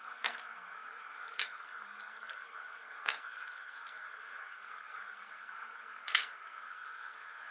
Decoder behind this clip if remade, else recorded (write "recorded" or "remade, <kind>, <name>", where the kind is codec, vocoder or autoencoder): remade, codec, SNAC